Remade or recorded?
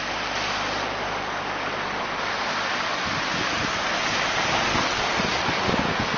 recorded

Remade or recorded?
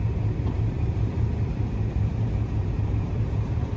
remade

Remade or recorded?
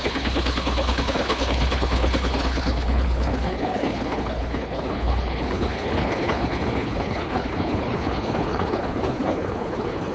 remade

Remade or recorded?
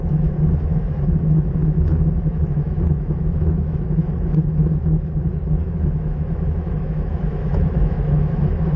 remade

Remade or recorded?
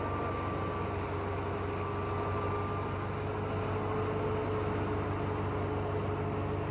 recorded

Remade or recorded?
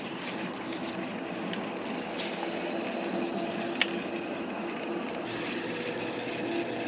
recorded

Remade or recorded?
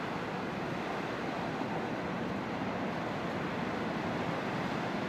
recorded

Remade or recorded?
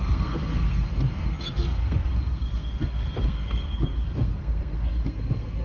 remade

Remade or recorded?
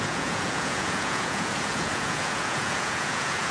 remade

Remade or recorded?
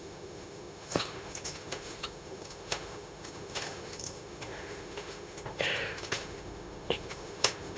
remade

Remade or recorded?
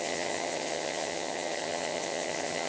remade